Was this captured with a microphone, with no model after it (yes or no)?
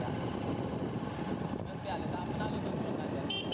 yes